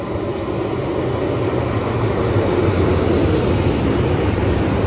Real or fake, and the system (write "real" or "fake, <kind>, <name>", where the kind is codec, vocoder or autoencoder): real